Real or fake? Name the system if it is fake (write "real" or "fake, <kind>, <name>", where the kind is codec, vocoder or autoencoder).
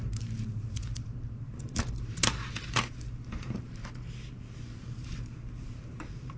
fake, vocoder, BigVGAN v2